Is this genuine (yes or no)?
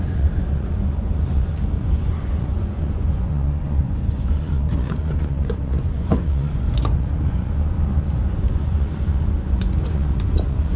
no